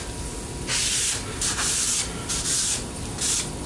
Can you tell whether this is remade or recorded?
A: recorded